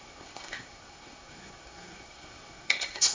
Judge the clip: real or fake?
fake